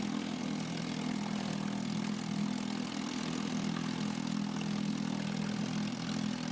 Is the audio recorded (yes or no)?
yes